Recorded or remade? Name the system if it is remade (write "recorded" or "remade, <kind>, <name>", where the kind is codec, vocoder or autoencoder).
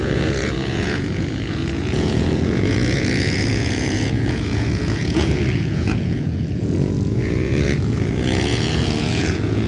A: remade, vocoder, Vocos